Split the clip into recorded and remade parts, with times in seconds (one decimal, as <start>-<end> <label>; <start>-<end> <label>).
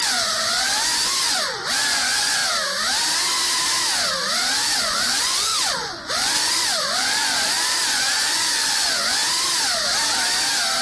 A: 0.0-2.4 remade; 2.4-4.8 recorded; 4.8-9.2 remade; 9.2-10.8 recorded